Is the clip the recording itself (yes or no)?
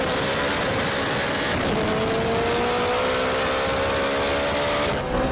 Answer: yes